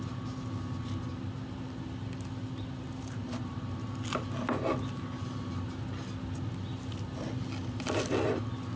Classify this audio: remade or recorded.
recorded